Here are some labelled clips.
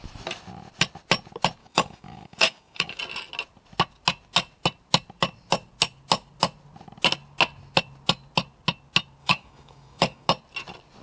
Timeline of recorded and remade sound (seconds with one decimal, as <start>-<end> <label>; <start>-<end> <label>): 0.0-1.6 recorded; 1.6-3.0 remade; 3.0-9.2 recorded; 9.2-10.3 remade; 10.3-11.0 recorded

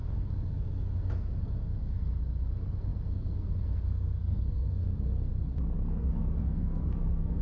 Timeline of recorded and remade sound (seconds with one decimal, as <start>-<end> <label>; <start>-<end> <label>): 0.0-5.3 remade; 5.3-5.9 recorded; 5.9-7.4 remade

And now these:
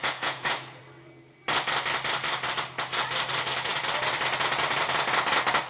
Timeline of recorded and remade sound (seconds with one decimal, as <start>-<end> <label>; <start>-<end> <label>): 0.0-0.8 remade; 0.8-5.7 recorded